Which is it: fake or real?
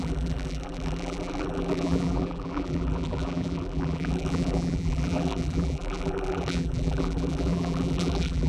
fake